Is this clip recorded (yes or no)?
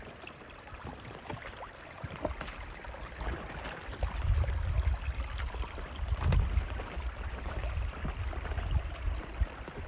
no